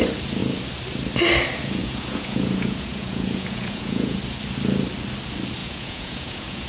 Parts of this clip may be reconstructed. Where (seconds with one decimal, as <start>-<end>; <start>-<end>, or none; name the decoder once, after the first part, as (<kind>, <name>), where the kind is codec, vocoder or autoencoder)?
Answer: 1.8-4.2 (vocoder, Vocos); 5.6-6.7